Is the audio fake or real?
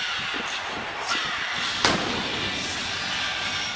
real